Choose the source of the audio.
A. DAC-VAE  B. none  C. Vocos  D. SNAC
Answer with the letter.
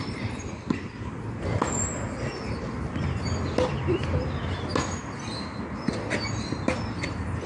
B